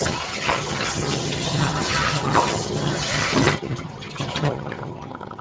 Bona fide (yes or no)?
no